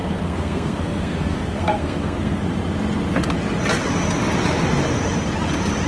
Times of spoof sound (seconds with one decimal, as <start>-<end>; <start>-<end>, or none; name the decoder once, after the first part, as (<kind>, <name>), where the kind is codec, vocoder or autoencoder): 0.0-2.4 (codec, SNAC)